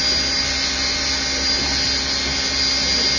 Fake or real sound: real